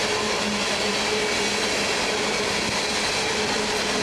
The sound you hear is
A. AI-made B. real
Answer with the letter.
B